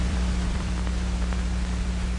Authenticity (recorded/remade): remade